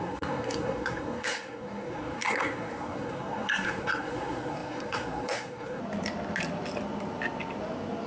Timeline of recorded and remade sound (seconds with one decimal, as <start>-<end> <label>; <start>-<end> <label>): 0.0-5.8 remade; 5.8-8.1 recorded